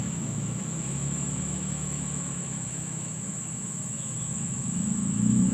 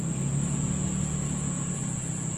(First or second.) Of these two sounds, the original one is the second